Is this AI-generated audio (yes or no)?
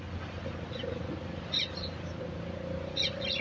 no